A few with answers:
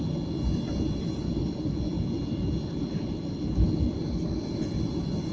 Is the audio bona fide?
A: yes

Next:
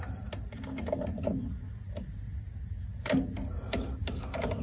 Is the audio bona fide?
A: yes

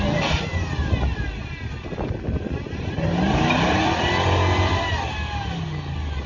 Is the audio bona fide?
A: yes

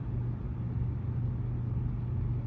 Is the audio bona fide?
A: yes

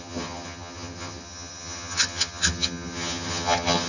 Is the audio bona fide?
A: no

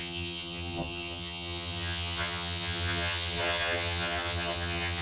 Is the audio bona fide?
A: no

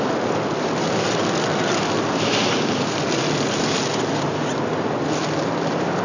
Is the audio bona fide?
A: yes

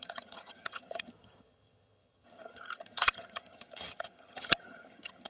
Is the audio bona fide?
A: no